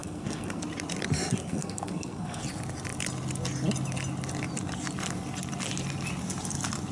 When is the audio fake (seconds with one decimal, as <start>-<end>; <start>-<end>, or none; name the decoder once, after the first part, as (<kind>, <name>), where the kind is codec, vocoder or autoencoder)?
0.0-0.6 (codec, SNAC); 1.4-2.4